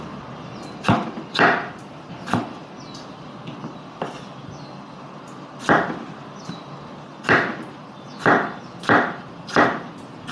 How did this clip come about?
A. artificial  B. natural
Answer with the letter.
B